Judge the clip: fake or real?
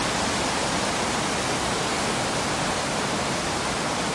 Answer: real